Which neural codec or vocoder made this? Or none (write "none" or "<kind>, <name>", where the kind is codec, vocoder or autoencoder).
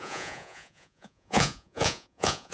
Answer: vocoder, Vocos